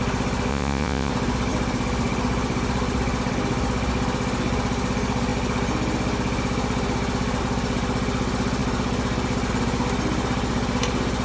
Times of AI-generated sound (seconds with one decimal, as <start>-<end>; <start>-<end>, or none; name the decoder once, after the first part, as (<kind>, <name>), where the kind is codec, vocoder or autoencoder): 0.5-1.1 (vocoder, Vocos)